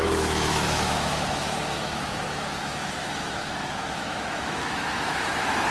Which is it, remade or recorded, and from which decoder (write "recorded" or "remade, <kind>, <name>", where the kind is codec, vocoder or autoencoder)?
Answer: remade, autoencoder, DAC-VAE